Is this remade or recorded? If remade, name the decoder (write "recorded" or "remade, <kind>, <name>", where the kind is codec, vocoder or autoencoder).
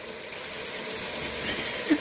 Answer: recorded